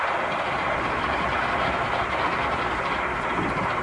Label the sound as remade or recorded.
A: remade